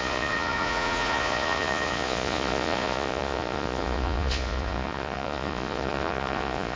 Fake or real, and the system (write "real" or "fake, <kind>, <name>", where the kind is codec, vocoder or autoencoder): fake, vocoder, Vocos